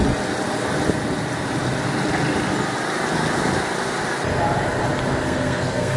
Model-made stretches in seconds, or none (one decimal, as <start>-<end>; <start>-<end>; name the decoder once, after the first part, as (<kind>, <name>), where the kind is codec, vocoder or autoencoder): 5.1-6.0 (codec, SNAC)